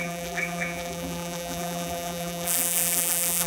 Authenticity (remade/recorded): remade